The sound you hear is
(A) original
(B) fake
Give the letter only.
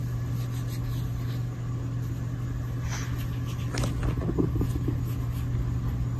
A